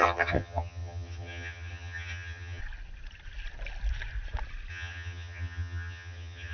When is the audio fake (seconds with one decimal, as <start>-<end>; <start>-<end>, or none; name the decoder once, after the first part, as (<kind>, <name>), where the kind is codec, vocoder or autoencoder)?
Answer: 0.0-2.6 (vocoder, HiFi-GAN); 4.7-6.5

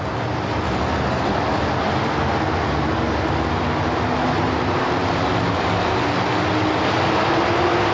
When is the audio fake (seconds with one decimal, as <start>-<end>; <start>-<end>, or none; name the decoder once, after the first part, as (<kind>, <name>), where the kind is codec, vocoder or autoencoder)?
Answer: none

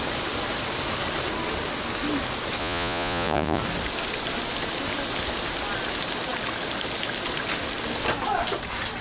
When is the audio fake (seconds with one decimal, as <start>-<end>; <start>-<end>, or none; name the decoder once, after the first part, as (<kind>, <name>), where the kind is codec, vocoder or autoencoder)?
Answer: 2.6-3.6 (vocoder, Vocos)

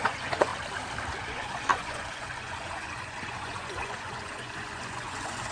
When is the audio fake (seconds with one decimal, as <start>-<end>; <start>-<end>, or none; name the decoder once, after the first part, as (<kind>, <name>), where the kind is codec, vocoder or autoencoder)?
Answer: 0.0-0.5 (vocoder, Vocos); 1.2-5.5